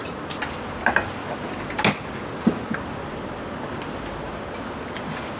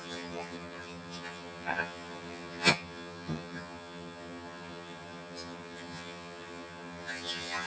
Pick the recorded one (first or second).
first